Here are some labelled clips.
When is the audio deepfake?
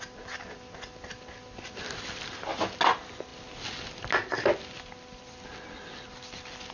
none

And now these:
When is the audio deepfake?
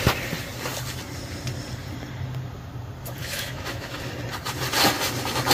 3.2-4.0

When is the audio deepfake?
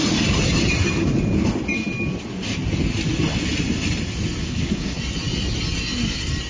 4.4-5.0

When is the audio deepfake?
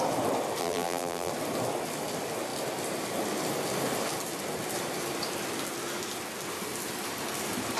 0.6-1.3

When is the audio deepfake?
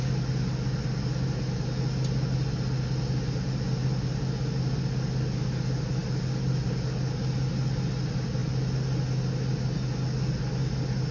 none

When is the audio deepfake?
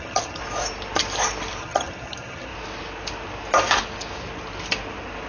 0.0-0.4; 1.6-2.5